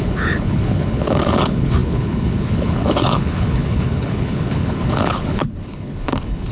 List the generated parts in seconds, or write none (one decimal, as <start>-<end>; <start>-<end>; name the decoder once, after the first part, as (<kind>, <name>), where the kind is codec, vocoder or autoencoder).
0.0-6.5 (codec, HILCodec)